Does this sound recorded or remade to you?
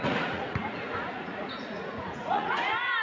remade